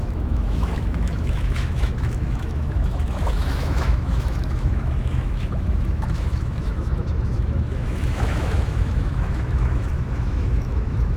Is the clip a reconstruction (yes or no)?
yes